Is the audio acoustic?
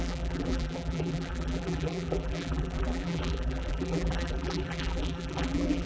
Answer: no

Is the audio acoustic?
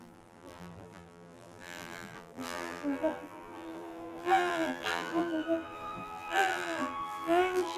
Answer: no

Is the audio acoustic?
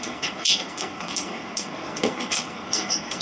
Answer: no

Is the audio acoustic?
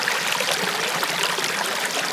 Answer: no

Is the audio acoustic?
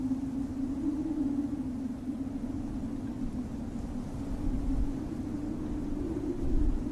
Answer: yes